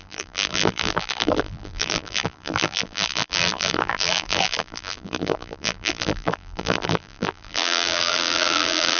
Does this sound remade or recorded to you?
remade